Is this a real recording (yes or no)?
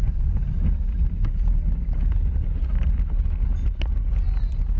yes